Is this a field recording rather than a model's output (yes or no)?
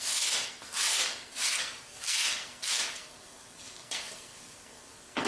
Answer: no